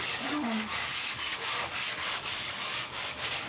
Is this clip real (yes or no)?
no